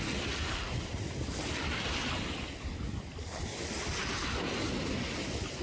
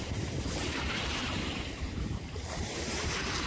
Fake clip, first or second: second